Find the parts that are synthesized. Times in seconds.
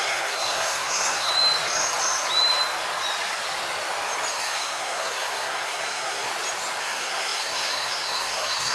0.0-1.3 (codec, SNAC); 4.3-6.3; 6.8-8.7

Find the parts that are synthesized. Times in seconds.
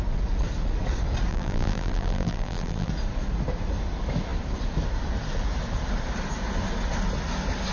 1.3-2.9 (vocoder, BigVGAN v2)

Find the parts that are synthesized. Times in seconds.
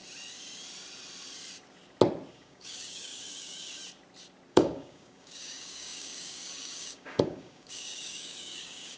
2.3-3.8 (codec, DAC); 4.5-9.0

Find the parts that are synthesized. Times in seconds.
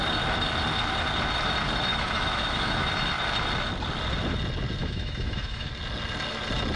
1.9-2.9 (autoencoder, DAC-VAE); 4.8-5.7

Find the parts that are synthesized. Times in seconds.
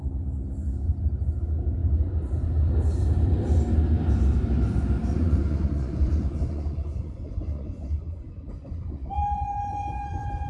5.1-10.5 (vocoder, Vocos)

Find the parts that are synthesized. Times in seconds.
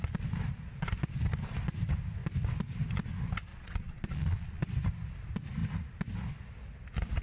3.5-4.6 (vocoder, Vocos)